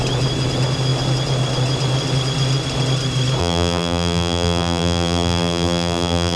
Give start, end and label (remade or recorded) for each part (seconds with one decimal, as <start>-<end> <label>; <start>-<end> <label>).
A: 0.0-3.4 recorded; 3.4-6.4 remade